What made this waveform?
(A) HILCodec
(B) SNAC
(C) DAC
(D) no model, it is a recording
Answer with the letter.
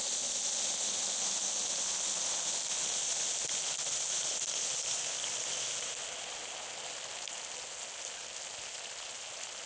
D